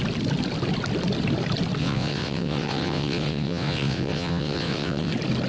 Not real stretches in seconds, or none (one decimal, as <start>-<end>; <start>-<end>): 1.8-5.1